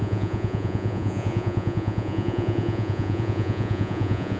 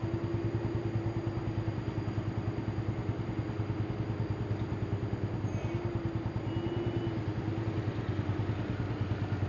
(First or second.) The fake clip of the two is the first